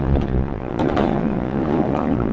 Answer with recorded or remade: remade